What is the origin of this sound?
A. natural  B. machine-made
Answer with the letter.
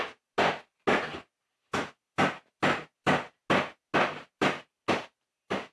A